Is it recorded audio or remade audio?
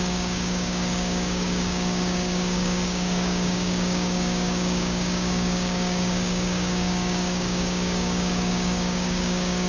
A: remade